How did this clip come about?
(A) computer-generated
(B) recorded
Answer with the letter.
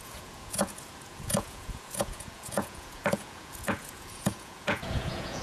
A